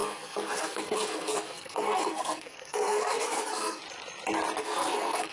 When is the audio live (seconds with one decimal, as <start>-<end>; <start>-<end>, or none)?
3.8-4.6